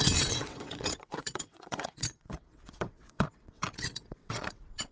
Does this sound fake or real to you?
fake